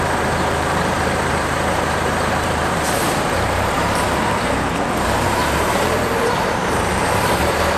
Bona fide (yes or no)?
no